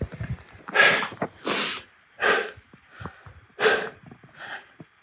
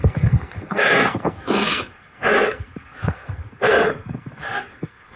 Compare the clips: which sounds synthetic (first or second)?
second